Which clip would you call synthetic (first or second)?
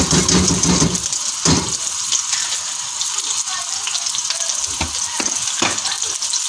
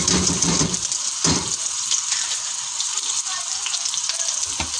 second